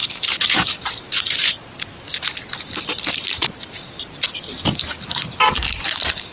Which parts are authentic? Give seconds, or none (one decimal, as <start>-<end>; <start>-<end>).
0.8-4.6